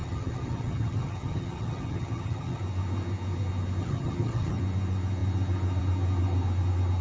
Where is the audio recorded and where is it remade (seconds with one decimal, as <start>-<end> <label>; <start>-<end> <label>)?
0.0-2.6 remade; 2.6-3.8 recorded; 3.8-4.6 remade; 4.6-7.0 recorded